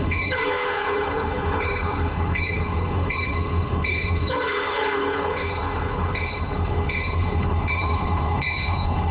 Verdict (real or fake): fake